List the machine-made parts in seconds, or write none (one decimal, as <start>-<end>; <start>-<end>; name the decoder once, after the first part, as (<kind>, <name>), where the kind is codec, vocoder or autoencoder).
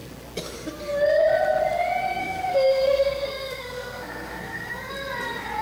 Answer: 2.2-4.9 (codec, SNAC)